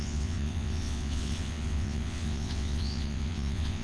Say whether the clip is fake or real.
fake